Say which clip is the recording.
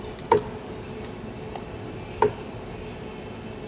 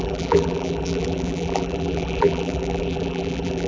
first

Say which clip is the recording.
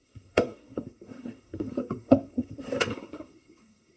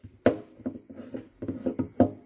second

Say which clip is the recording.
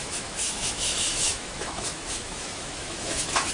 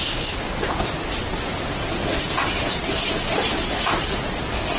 second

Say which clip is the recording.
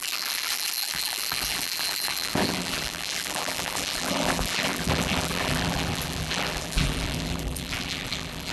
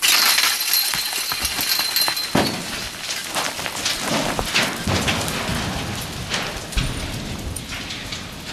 second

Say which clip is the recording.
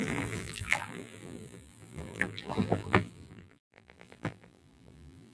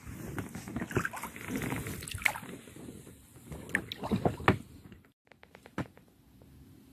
second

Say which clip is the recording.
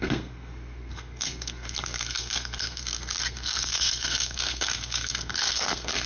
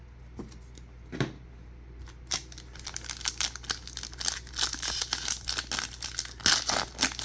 second